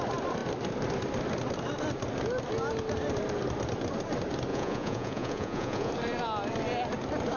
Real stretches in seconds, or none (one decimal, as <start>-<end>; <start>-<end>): 0.0-4.5; 5.9-7.4